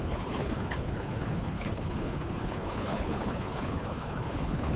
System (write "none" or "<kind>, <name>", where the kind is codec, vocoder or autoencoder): codec, HILCodec